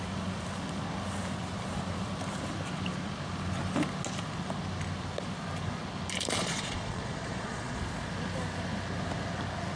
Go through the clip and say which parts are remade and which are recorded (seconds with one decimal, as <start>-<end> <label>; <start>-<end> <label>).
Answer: 0.0-6.4 recorded; 6.4-7.8 remade; 7.8-9.8 recorded

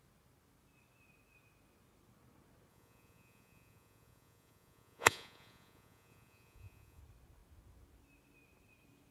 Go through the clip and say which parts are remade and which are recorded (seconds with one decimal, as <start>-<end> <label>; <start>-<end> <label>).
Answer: 0.0-2.7 recorded; 2.7-7.0 remade; 7.0-9.1 recorded